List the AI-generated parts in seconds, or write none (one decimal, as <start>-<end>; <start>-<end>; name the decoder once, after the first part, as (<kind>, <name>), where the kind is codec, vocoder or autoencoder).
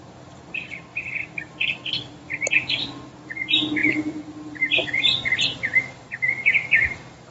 0.9-2.8 (vocoder, BigVGAN v2); 3.8-7.3